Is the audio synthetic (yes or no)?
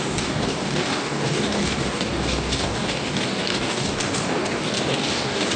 yes